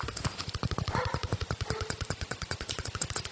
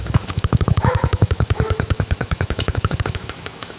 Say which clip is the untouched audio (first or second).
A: first